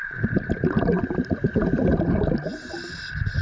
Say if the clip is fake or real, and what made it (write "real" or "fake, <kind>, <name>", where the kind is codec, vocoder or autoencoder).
real